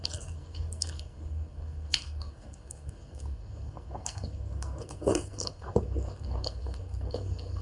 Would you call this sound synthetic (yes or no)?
yes